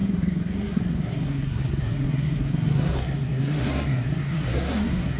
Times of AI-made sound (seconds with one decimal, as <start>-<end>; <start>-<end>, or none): 0.0-5.2